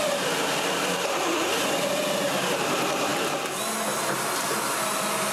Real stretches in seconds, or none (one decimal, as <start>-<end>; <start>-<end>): 0.0-5.3